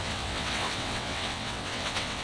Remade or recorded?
remade